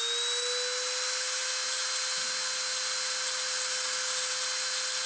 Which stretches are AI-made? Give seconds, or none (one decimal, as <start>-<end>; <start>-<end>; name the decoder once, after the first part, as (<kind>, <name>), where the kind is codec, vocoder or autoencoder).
none

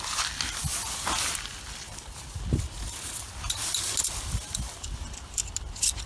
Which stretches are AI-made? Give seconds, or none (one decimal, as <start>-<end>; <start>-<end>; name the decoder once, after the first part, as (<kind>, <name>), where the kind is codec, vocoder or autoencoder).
none

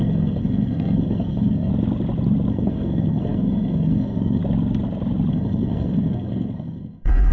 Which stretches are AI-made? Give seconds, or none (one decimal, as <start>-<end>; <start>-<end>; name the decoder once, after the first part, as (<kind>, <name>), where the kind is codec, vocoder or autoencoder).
0.0-1.7 (codec, SNAC); 2.5-4.4; 5.3-7.3